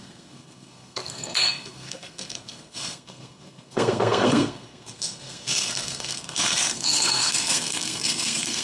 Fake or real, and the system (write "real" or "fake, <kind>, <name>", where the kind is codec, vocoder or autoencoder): fake, codec, SNAC